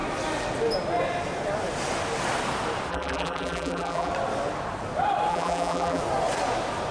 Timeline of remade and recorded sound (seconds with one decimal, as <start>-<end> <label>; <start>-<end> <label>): 0.0-2.9 recorded; 2.9-4.1 remade; 4.1-5.3 recorded; 5.3-6.0 remade; 6.0-6.9 recorded